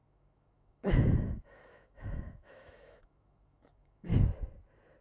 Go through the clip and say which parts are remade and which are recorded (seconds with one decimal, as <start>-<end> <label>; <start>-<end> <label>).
0.0-4.1 remade; 4.1-5.0 recorded